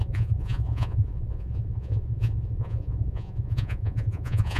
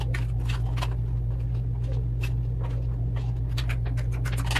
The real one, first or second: second